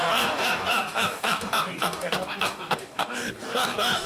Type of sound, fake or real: fake